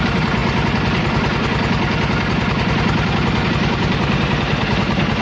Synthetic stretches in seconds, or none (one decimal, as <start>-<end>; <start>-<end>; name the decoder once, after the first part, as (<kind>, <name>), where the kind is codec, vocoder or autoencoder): 0.0-0.4 (vocoder, BigVGAN v2); 3.5-5.2